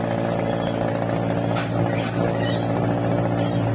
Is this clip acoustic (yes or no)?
yes